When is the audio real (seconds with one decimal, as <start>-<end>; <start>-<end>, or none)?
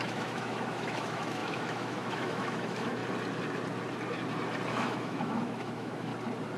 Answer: 3.0-4.7; 6.1-6.6